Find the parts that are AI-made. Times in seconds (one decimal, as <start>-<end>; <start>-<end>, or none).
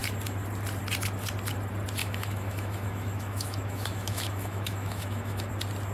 2.0-5.5